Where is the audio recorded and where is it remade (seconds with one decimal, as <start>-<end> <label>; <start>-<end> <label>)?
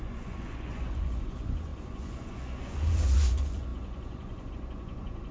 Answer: 0.0-5.3 remade